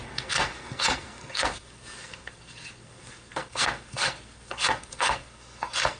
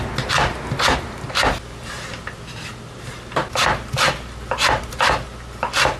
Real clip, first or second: second